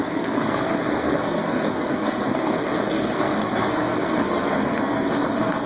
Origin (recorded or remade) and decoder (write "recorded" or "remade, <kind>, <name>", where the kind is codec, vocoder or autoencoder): remade, codec, SNAC